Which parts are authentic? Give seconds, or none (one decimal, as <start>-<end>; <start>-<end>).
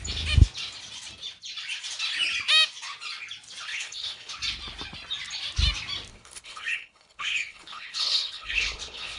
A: 0.0-3.7; 4.3-6.1